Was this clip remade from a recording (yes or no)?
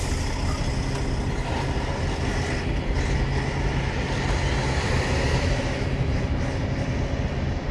no